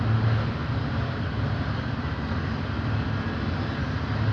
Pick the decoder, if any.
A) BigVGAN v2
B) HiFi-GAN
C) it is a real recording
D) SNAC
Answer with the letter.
C